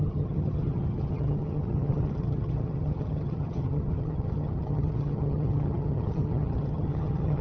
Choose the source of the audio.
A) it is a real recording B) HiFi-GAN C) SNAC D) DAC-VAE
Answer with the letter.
B